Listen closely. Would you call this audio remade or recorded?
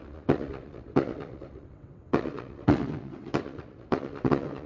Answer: remade